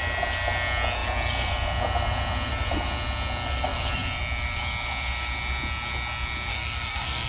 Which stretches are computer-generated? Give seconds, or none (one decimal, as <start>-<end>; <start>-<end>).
6.5-7.3